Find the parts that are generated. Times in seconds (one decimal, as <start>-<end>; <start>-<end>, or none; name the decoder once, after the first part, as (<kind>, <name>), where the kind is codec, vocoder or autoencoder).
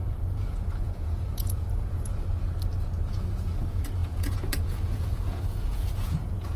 0.0-2.1 (vocoder, Vocos); 3.1-6.6